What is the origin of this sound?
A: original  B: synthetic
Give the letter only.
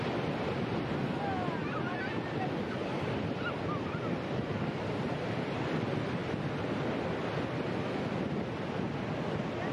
A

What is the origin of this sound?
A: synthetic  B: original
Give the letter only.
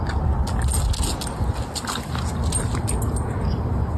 B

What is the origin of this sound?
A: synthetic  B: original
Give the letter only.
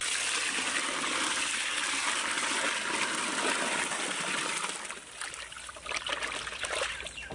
B